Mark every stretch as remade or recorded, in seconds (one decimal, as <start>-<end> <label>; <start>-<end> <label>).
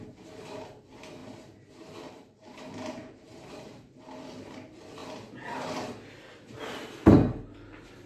0.0-1.2 recorded; 1.2-4.0 remade; 4.0-8.1 recorded